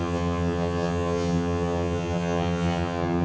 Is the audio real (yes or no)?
no